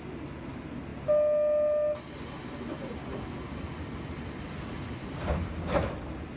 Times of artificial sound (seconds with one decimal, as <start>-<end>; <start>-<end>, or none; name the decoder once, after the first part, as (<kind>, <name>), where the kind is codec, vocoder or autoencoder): 2.8-5.4 (vocoder, BigVGAN v2)